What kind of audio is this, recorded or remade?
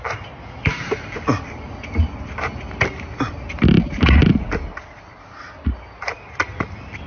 recorded